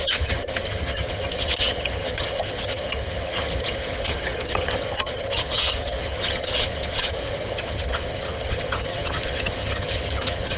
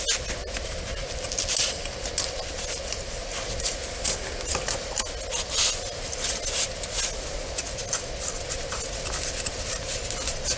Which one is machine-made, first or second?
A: first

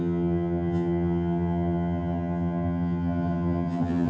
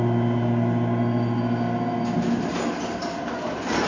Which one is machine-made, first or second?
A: first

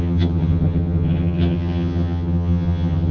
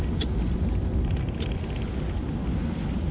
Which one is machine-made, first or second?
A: first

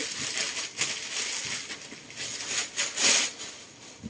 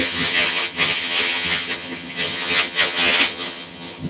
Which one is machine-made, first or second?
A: second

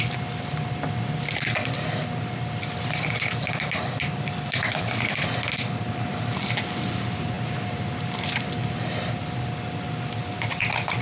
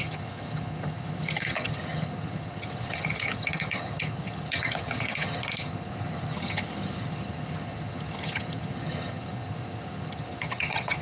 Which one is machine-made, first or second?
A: second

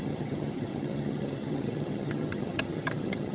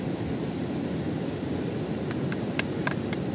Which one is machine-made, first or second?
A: first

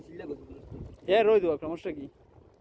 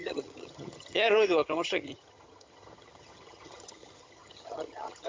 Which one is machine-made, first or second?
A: second